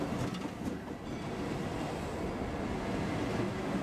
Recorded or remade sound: recorded